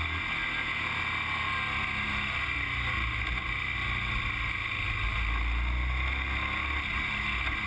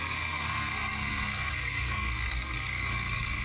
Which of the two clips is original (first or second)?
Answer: first